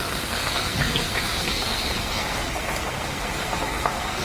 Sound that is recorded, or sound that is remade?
remade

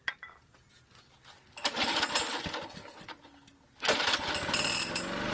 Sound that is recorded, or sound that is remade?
recorded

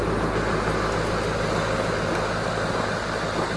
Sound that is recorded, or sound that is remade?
recorded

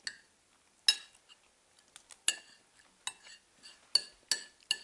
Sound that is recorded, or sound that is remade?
recorded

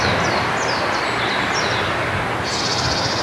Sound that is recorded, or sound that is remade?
recorded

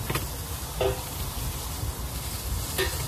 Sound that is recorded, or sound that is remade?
recorded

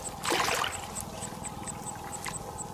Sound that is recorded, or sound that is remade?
recorded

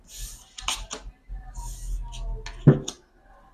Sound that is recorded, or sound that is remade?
recorded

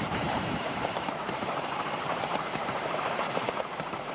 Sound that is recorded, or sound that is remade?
remade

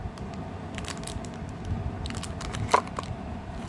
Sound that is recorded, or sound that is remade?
recorded